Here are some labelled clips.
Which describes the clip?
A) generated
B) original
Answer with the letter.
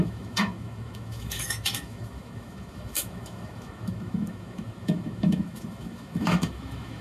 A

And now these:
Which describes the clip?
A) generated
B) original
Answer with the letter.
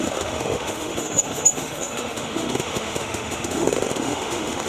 A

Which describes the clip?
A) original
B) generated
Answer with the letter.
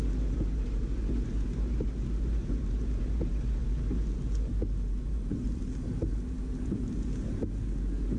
A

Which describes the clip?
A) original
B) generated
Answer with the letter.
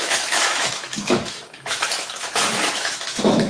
B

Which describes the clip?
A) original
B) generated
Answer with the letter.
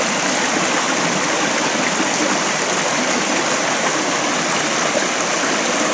A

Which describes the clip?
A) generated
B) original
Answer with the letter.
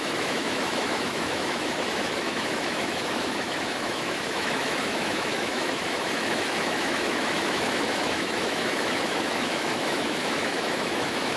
A